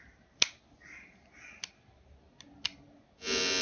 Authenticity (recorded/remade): recorded